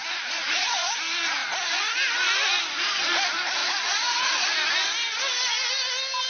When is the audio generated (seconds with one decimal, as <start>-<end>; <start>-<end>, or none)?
0.0-0.9; 3.6-4.2